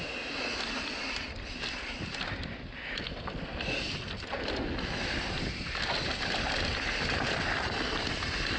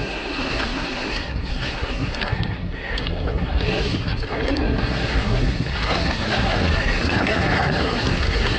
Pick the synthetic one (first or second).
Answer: second